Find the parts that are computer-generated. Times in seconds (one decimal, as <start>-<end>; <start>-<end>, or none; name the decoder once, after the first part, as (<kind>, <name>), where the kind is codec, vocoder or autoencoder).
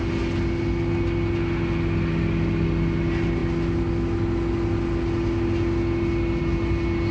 none